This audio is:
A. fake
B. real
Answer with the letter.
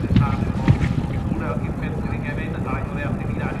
B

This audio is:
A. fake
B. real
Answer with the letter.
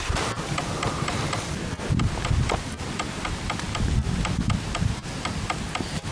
B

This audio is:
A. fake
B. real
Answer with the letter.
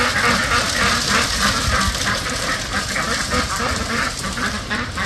B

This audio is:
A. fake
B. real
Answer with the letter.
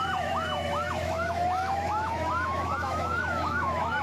A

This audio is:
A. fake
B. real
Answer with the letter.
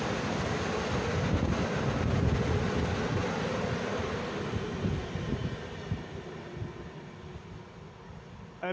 B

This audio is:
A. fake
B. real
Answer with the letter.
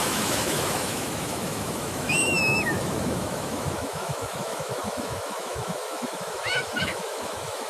A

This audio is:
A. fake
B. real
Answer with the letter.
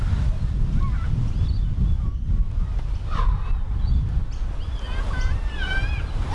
A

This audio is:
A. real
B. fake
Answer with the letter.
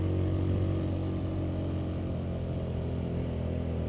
A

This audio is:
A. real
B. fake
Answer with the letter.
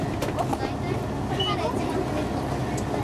A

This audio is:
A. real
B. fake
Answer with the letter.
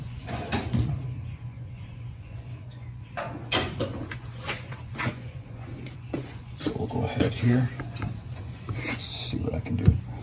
B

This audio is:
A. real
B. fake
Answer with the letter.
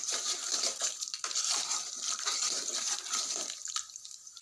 B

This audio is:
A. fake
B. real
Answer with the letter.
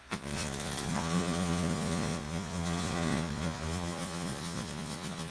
A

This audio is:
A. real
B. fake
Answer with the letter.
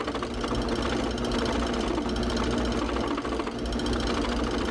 A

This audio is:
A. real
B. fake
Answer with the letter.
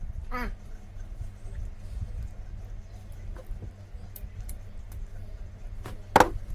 A